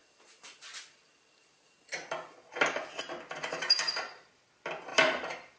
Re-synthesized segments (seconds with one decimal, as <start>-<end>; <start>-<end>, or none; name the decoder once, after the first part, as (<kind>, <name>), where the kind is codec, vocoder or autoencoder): 4.9-5.6 (vocoder, BigVGAN v2)